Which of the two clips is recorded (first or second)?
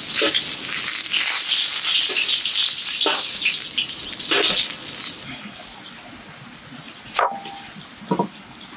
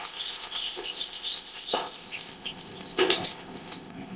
first